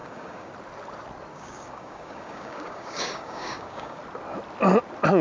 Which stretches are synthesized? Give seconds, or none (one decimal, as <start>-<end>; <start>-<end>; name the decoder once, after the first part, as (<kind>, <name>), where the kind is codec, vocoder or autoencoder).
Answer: 0.0-0.5 (codec, DAC); 1.3-4.0